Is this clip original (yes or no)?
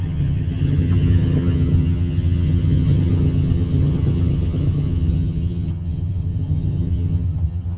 no